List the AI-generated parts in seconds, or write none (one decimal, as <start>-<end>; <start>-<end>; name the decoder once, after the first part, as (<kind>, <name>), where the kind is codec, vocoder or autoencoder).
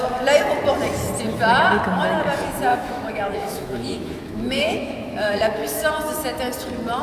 2.7-5.9 (autoencoder, DAC-VAE)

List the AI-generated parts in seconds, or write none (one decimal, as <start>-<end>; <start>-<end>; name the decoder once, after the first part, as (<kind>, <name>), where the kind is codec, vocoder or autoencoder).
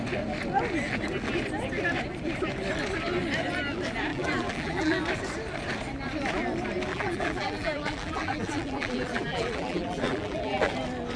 4.1-5.0 (vocoder, BigVGAN v2); 6.9-10.7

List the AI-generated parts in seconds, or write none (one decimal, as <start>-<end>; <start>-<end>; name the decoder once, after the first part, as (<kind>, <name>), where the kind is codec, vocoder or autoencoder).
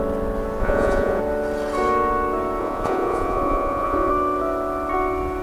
0.6-1.2 (vocoder, Vocos); 2.6-4.1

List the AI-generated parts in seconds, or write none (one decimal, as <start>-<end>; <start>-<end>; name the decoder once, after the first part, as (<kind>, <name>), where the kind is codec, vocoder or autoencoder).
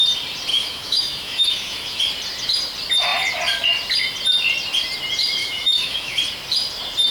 0.5-2.0 (autoencoder, DAC-VAE); 5.4-6.2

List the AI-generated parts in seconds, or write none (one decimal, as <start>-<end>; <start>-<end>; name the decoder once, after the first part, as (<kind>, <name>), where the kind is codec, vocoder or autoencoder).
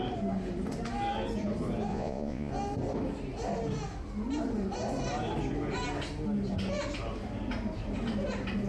1.9-2.5 (vocoder, Vocos)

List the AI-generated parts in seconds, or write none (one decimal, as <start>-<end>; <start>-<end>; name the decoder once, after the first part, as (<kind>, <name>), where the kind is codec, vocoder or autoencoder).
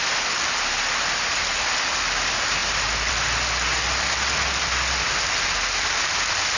none